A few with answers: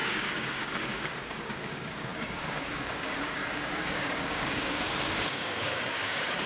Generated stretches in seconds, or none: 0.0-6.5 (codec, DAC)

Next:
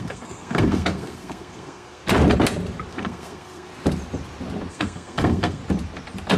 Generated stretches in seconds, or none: 0.0-2.0 (codec, SNAC); 2.9-3.7; 4.7-5.6

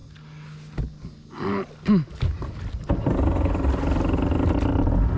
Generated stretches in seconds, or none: none

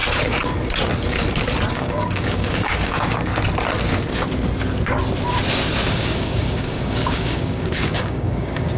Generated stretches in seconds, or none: 1.7-3.3 (codec, DAC); 5.9-8.8